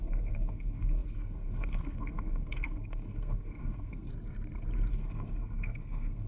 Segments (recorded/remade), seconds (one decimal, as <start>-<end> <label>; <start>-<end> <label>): 0.0-4.1 remade; 4.1-4.9 recorded; 4.9-6.3 remade